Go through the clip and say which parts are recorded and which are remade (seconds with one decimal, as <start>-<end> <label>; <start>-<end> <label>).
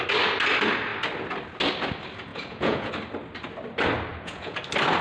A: 0.0-2.3 recorded; 2.3-2.9 remade; 2.9-4.1 recorded; 4.1-4.6 remade; 4.6-5.0 recorded